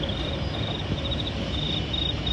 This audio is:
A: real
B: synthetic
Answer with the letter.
A